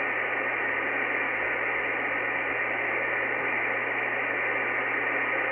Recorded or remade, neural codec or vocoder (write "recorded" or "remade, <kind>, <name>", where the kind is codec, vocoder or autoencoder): recorded